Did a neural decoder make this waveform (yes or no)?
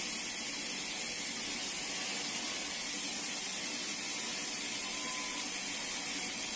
no